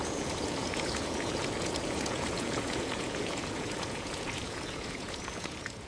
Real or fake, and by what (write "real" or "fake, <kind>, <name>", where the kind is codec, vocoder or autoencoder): fake, vocoder, Vocos